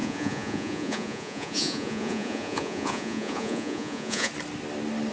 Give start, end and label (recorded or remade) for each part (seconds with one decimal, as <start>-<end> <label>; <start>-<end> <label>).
0.0-4.3 remade; 4.3-5.1 recorded